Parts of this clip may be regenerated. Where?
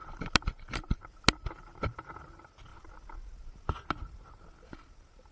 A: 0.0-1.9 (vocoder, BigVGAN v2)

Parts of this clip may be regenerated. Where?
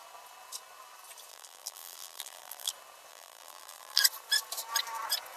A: 1.3-2.7 (vocoder, BigVGAN v2); 3.1-4.0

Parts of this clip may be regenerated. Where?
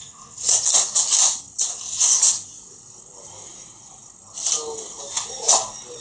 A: 0.0-0.5 (codec, SNAC); 1.7-2.2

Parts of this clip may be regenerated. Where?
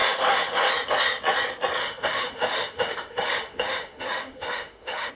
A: 0.0-0.7 (autoencoder, DAC-VAE); 1.8-5.1